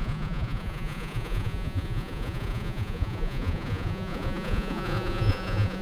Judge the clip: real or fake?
fake